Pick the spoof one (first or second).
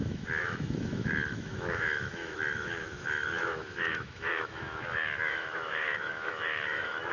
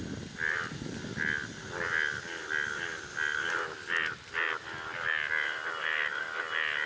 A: first